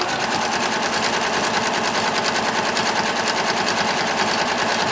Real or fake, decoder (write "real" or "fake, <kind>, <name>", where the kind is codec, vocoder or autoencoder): fake, vocoder, BigVGAN v2